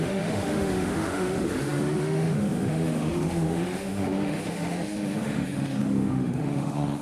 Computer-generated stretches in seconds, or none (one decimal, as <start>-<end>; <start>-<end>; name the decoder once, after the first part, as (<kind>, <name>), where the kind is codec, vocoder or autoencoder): 0.0-7.0 (autoencoder, DAC-VAE)